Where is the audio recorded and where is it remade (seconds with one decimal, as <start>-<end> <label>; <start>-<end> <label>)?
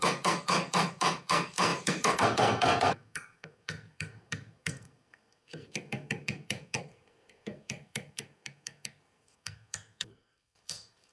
0.0-11.1 remade